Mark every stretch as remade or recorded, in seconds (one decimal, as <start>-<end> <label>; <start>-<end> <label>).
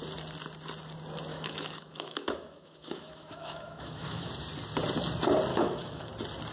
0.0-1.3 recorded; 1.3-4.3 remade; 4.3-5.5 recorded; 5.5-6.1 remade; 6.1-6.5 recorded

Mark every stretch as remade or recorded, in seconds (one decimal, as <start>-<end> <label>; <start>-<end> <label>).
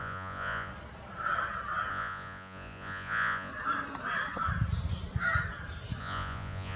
0.0-0.7 remade; 0.7-1.9 recorded; 1.9-3.5 remade; 3.5-6.0 recorded; 6.0-6.8 remade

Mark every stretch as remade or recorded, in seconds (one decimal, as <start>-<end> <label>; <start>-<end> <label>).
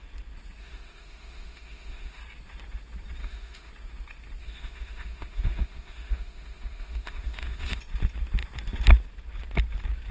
0.0-0.6 recorded; 0.6-2.2 remade; 2.2-3.2 recorded; 3.2-3.7 remade; 3.7-4.4 recorded; 4.4-7.8 remade; 7.8-10.1 recorded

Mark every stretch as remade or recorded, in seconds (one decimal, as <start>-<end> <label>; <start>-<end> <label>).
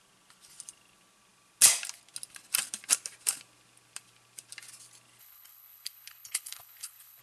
0.0-5.2 recorded; 5.2-7.2 remade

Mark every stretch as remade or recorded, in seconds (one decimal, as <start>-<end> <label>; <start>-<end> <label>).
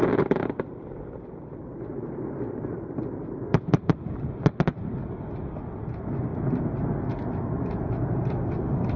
0.0-9.0 recorded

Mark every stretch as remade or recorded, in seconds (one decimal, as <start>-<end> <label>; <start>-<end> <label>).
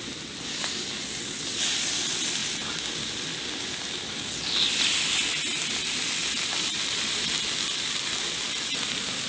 0.0-9.3 recorded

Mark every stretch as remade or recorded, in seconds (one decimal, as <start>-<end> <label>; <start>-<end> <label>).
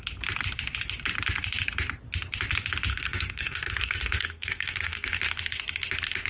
0.0-2.9 recorded; 2.9-5.2 remade; 5.2-6.3 recorded